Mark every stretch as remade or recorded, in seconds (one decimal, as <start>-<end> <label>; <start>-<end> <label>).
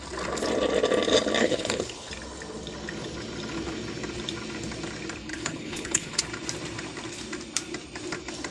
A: 0.0-1.4 recorded; 1.4-2.1 remade; 2.1-5.3 recorded; 5.3-6.2 remade; 6.2-8.5 recorded